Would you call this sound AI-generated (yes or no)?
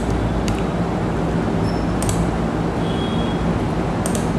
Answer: no